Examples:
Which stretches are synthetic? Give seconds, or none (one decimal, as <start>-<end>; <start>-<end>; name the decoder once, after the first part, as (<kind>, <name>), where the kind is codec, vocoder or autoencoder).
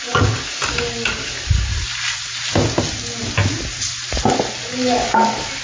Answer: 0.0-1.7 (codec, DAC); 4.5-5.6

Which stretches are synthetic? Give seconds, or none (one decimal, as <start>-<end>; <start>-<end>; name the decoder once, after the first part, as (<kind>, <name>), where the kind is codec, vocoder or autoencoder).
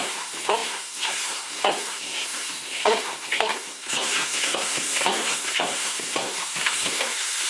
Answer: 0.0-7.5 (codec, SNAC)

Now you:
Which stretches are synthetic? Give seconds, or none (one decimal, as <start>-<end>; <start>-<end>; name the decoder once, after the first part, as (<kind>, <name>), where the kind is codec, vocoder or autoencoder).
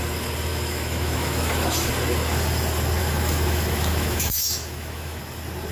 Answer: 0.5-1.9 (autoencoder, DAC-VAE); 3.0-5.2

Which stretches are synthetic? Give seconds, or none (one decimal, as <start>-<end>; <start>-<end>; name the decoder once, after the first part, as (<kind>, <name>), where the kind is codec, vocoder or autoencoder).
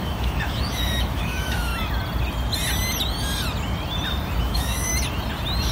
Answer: 0.0-1.7 (autoencoder, DAC-VAE); 4.4-4.9